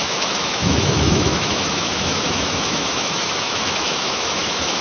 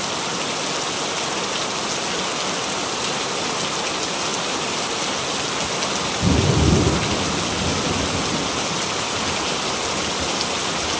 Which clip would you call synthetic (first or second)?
first